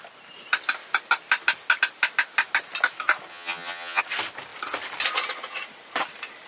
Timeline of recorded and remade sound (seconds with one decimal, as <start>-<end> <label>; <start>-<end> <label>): 0.0-3.3 recorded; 3.3-4.0 remade; 4.0-6.5 recorded